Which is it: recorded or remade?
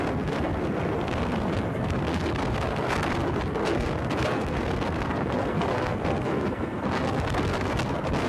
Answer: remade